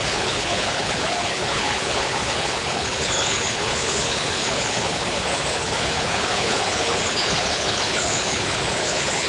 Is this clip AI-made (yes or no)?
yes